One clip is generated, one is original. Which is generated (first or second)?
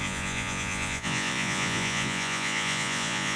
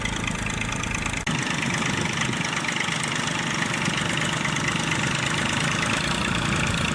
first